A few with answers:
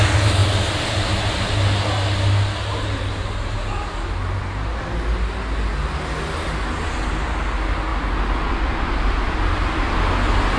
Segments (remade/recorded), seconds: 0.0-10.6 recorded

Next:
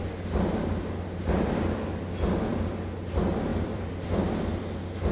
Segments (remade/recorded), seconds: 0.0-3.5 recorded; 3.5-4.2 remade; 4.2-5.1 recorded

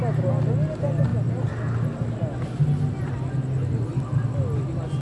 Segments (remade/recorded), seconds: 0.0-5.0 recorded